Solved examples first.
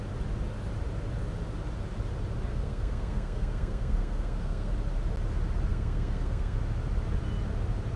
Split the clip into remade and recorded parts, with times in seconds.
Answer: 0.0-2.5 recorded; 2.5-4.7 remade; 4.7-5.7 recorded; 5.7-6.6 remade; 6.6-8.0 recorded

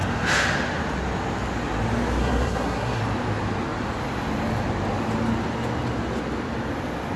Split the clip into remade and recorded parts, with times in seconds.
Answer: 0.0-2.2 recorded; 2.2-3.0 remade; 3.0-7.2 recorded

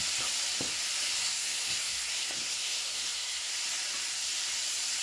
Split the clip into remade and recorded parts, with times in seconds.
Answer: 0.0-1.2 recorded; 1.2-3.5 remade; 3.5-5.0 recorded